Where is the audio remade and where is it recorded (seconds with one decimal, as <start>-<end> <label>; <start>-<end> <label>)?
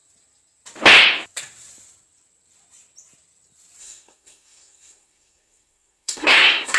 0.0-3.8 recorded; 3.8-6.8 remade